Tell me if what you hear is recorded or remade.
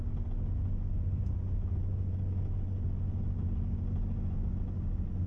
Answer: recorded